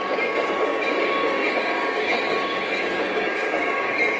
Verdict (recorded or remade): remade